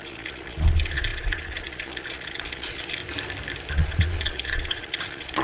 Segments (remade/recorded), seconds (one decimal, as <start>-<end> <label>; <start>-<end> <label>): 0.0-3.0 remade; 3.0-3.7 recorded; 3.7-5.4 remade